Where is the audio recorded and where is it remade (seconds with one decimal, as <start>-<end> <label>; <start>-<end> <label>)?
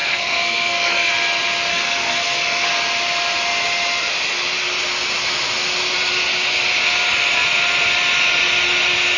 0.0-1.1 remade; 1.1-1.7 recorded; 1.7-2.7 remade; 2.7-9.2 recorded